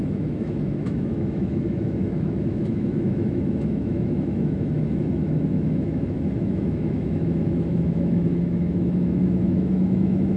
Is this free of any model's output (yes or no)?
no